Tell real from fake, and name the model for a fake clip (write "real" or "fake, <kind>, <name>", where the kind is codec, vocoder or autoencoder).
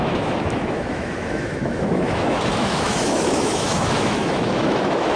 fake, autoencoder, DAC-VAE